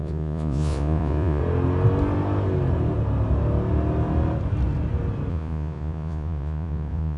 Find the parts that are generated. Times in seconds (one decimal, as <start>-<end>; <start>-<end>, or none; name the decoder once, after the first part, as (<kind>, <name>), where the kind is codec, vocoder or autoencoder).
0.0-1.4 (vocoder, Vocos); 5.3-7.2